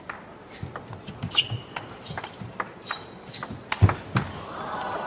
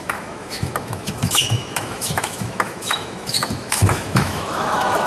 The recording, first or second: first